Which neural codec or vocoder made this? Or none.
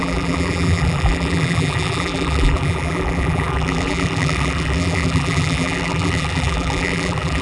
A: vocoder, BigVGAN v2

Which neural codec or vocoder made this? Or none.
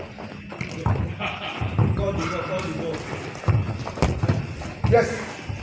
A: none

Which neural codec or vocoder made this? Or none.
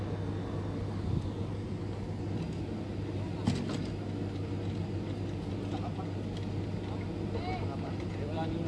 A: none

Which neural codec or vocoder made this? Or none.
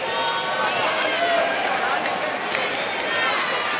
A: none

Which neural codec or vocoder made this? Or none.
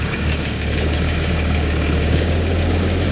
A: codec, DAC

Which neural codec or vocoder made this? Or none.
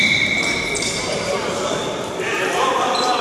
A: vocoder, BigVGAN v2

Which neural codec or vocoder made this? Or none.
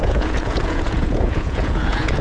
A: vocoder, Vocos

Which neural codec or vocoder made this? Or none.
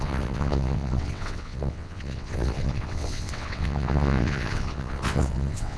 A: vocoder, WaveNeXt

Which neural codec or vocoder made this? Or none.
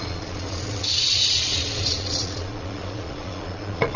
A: vocoder, Vocos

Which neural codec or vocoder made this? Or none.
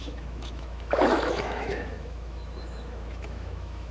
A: autoencoder, DAC-VAE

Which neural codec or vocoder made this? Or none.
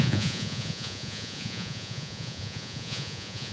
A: vocoder, Vocos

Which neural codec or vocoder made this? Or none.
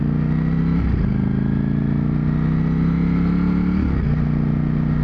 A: none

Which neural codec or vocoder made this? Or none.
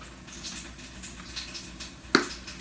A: none